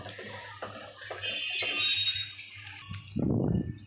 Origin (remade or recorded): recorded